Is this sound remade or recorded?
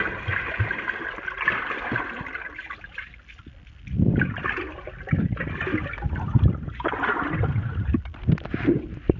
recorded